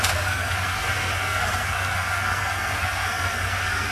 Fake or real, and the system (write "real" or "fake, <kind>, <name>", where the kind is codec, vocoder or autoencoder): fake, codec, SNAC